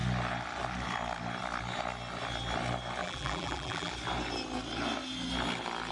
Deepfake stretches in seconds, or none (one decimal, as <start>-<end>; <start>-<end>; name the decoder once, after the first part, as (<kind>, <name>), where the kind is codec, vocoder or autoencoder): 3.0-3.9 (vocoder, BigVGAN v2)